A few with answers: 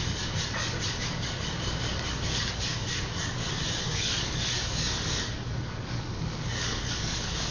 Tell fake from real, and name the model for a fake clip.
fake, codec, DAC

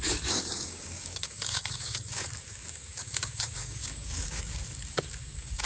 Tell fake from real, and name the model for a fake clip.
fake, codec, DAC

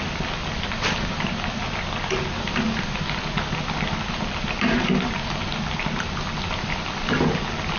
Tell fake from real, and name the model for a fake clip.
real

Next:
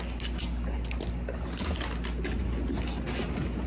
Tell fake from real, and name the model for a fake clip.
real